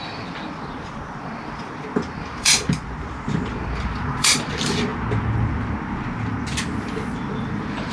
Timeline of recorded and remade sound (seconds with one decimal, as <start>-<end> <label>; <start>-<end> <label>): 0.0-4.9 remade; 4.9-7.3 recorded; 7.3-7.9 remade